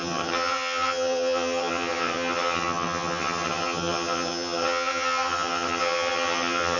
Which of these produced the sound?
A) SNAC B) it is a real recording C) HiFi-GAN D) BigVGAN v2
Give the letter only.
C